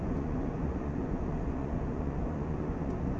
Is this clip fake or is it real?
fake